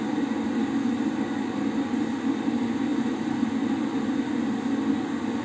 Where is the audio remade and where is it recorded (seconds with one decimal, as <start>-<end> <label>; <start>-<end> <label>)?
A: 0.0-0.6 recorded; 0.6-2.5 remade; 2.5-5.4 recorded